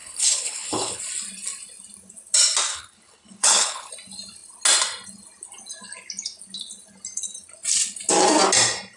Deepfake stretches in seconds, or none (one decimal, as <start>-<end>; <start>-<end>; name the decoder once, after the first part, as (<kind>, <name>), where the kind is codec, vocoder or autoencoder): 0.0-1.0 (codec, HILCodec); 2.7-3.9